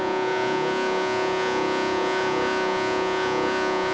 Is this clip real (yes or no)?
no